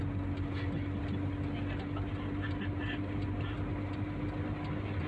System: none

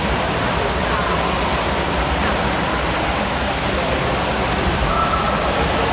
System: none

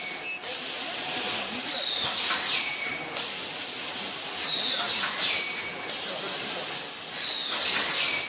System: none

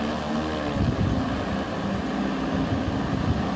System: none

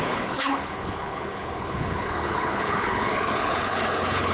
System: codec, HILCodec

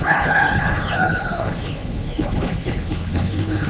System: codec, HILCodec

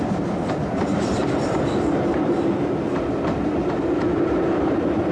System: none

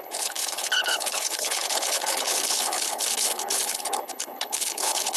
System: codec, HILCodec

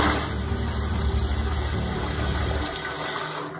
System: none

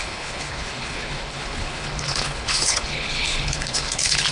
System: codec, HILCodec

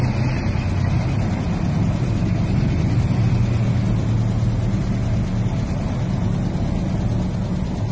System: none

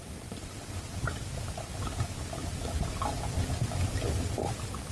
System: none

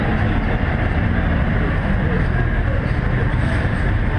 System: none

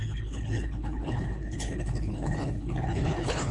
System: codec, HILCodec